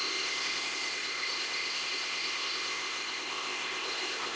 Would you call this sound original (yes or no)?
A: no